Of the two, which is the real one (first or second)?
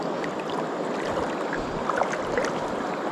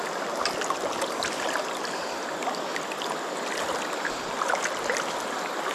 second